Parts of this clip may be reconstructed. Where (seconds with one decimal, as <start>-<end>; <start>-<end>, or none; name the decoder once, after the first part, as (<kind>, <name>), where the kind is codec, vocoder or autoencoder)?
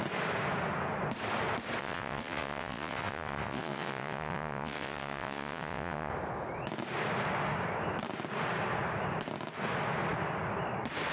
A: 1.8-6.1 (vocoder, WaveNeXt)